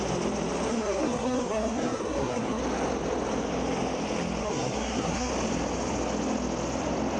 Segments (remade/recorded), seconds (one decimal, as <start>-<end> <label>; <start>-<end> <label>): 0.0-0.7 recorded; 0.7-2.6 remade; 2.6-4.4 recorded; 4.4-5.3 remade; 5.3-7.2 recorded

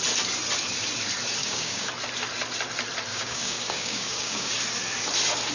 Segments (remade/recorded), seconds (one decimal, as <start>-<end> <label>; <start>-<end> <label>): 0.0-1.4 recorded; 1.4-1.9 remade; 1.9-3.1 recorded; 3.1-4.5 remade; 4.5-5.5 recorded

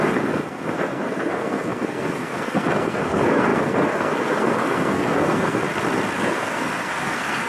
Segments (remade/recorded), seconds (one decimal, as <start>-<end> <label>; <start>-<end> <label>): 0.0-5.6 remade; 5.6-6.2 recorded; 6.2-7.5 remade

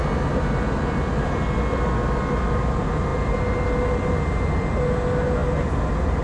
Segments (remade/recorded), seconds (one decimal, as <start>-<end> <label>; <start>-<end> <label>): 0.0-6.2 recorded

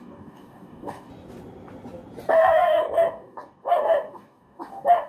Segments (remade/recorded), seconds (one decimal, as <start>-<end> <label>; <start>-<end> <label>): 0.0-1.1 remade; 1.1-2.3 recorded; 2.3-5.1 remade

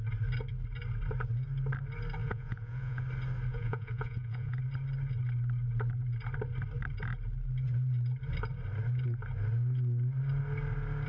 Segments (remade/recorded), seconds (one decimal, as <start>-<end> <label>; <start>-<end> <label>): 0.0-2.2 recorded; 2.2-3.0 remade; 3.0-3.5 recorded; 3.5-4.6 remade; 4.6-11.1 recorded

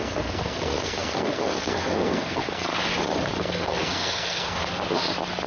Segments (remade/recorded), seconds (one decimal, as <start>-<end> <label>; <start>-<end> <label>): 0.0-2.7 remade; 2.7-3.4 recorded; 3.4-4.6 remade; 4.6-5.5 recorded

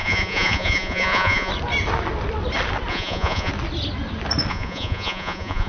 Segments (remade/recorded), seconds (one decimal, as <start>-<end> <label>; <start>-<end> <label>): 0.0-1.5 remade; 1.5-2.9 recorded; 2.9-3.5 remade; 3.5-4.5 recorded; 4.5-5.7 remade